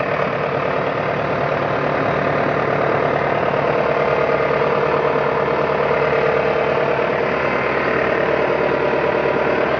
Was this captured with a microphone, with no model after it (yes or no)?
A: yes